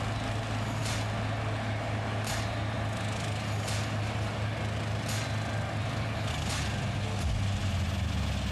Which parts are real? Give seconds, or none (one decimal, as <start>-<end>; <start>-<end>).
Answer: 0.0-5.8; 6.3-8.5